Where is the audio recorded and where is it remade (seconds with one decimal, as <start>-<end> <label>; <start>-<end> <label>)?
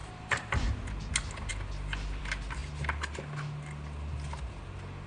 0.0-0.7 remade; 0.7-5.1 recorded